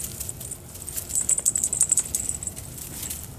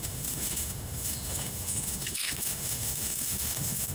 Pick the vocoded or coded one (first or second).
second